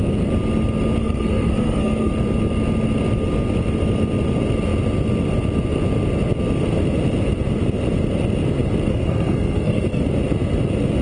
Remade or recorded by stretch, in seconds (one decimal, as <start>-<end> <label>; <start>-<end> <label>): 0.0-1.0 recorded; 1.0-2.1 remade; 2.1-8.9 recorded; 8.9-10.0 remade; 10.0-11.0 recorded